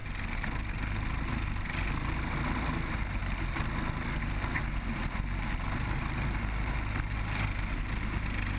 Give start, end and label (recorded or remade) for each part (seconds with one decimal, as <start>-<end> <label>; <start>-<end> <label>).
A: 0.0-8.6 recorded